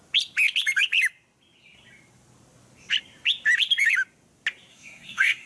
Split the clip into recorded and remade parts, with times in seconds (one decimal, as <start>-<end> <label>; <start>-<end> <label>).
0.0-4.7 recorded; 4.7-5.5 remade